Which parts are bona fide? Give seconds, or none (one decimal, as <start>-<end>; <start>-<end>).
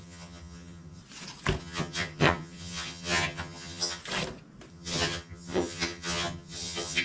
1.0-1.6; 4.0-4.7